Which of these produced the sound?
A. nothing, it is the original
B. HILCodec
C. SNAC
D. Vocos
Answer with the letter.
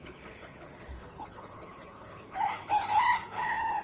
B